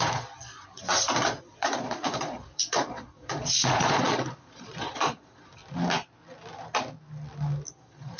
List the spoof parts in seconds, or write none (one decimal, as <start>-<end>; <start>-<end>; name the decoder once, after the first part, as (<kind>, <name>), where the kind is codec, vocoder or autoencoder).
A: 0.0-5.6 (vocoder, Vocos); 7.7-8.2